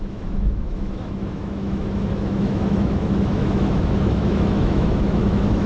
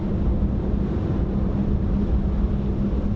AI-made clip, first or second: first